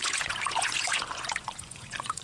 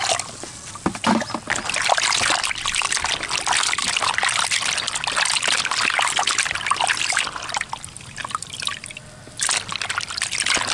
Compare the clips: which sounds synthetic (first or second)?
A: first